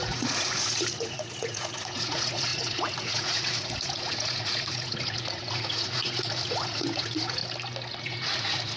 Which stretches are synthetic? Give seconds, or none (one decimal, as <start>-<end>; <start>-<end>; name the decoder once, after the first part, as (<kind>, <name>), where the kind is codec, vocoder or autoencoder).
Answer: 0.0-7.4 (vocoder, Vocos); 8.0-8.8